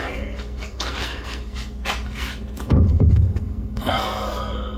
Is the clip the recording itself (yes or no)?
no